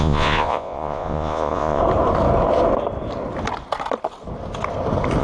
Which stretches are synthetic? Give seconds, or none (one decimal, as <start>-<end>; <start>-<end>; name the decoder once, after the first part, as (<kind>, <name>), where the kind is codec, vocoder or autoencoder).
0.0-1.8 (vocoder, Vocos)